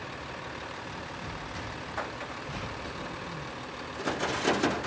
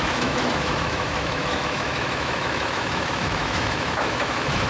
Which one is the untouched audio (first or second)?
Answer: first